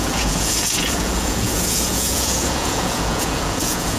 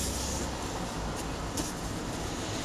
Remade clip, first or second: first